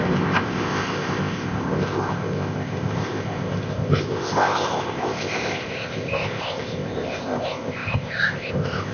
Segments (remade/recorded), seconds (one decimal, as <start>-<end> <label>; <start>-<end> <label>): 0.0-8.9 remade